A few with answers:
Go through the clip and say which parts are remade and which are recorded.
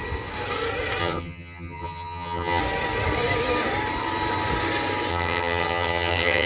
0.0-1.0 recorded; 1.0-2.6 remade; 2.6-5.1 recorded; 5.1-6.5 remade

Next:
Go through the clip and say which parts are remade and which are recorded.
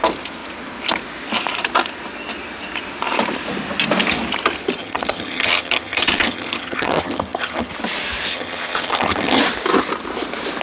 0.0-4.8 recorded; 4.8-7.7 remade; 7.7-8.3 recorded; 8.3-9.4 remade; 9.4-10.6 recorded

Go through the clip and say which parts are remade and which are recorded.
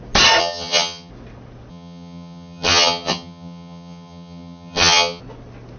0.0-0.4 recorded; 0.4-1.1 remade; 1.1-1.7 recorded; 1.7-5.2 remade; 5.2-5.8 recorded